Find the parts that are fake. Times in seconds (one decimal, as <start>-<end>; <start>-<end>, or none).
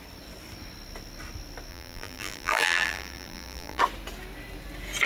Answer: 1.7-3.8